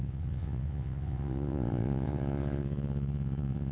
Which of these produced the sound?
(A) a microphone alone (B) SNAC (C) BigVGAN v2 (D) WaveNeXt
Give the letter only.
D